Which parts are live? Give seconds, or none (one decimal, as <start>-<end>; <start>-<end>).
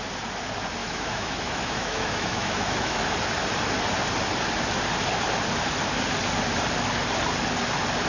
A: 0.0-0.8; 3.0-8.1